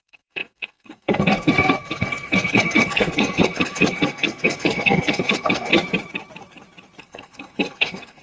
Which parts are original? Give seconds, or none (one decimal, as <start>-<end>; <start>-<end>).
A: 5.7-7.0